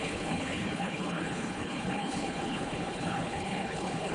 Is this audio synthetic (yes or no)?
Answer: yes